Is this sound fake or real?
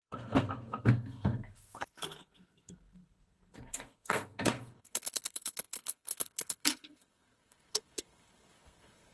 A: fake